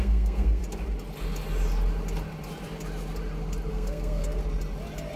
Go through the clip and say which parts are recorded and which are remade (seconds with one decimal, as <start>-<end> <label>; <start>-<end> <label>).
0.0-0.6 remade; 0.6-3.7 recorded; 3.7-4.4 remade; 4.4-5.2 recorded